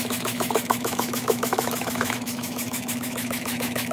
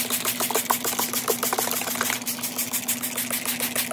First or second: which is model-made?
first